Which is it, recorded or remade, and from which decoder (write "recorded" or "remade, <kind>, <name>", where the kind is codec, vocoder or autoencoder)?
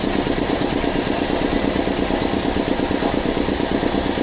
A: recorded